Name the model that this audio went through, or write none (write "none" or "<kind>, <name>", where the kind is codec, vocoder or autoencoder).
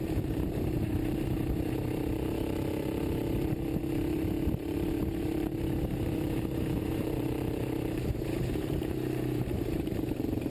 vocoder, BigVGAN v2